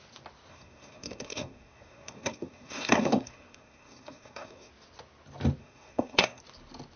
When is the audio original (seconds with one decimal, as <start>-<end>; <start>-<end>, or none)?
0.0-0.5; 4.7-5.6; 6.4-7.0